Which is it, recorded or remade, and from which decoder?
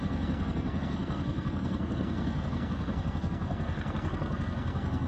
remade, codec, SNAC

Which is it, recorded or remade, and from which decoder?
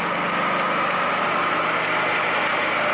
recorded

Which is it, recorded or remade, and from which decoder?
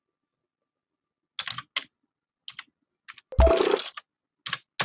recorded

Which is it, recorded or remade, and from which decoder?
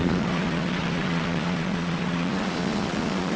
remade, vocoder, Vocos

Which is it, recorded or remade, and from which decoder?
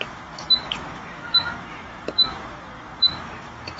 remade, autoencoder, DAC-VAE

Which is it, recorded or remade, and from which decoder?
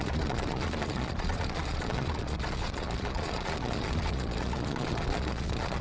remade, vocoder, Vocos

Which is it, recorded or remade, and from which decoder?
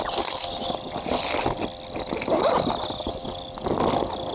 recorded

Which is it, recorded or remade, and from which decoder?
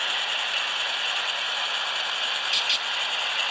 recorded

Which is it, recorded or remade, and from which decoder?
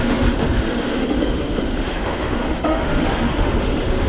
remade, autoencoder, DAC-VAE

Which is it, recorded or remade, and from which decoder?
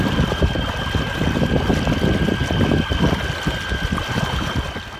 recorded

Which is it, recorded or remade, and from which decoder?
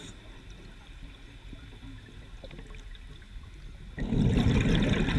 recorded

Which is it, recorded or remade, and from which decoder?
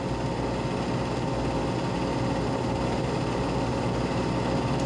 recorded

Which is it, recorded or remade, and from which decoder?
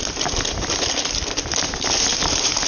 recorded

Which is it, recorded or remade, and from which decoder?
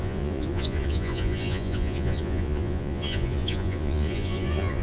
remade, vocoder, Vocos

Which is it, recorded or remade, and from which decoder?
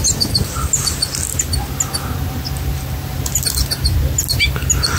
recorded